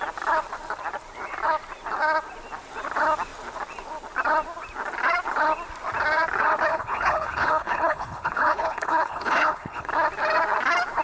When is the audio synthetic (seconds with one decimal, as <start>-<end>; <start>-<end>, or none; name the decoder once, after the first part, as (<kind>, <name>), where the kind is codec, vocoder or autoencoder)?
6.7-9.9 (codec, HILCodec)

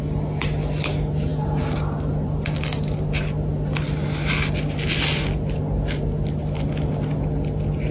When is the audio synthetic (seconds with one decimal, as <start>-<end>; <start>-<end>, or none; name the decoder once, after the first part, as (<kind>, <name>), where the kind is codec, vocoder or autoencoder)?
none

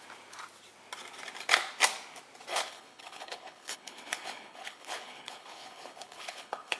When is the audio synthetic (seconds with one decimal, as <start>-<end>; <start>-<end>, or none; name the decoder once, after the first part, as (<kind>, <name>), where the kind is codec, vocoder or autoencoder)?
2.5-6.8 (codec, HILCodec)

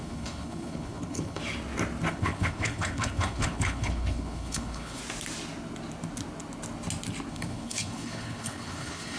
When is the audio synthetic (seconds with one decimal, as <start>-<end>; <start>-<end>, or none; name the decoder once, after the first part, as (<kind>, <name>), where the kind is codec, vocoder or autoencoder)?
0.0-1.4 (codec, HILCodec); 2.1-5.0; 7.3-9.2

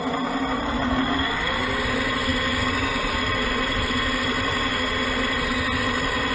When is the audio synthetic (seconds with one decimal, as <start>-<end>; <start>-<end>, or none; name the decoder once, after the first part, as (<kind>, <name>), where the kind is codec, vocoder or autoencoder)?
none